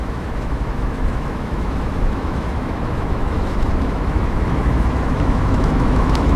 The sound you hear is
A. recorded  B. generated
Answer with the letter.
B